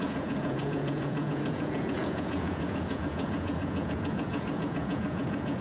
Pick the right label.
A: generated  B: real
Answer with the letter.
A